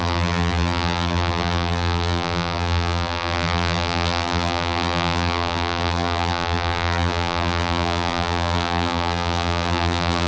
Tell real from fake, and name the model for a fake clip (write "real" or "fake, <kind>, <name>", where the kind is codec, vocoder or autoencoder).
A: fake, vocoder, BigVGAN v2